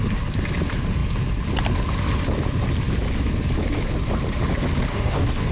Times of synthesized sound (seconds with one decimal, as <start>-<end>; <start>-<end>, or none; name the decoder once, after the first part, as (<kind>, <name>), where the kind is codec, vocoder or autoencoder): 4.9-5.5 (codec, DAC)